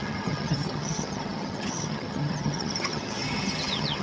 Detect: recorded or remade remade